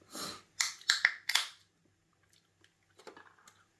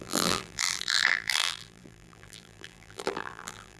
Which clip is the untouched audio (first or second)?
first